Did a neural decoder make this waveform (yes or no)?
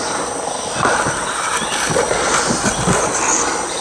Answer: no